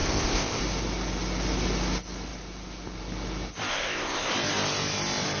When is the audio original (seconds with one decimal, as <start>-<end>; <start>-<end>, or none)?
0.6-3.7; 4.3-5.4